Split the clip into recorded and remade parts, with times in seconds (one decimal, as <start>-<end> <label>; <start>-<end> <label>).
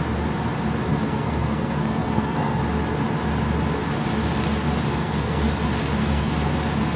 0.0-0.9 recorded; 0.9-2.6 remade; 2.6-4.9 recorded; 4.9-5.5 remade; 5.5-6.0 recorded; 6.0-6.5 remade; 6.5-7.0 recorded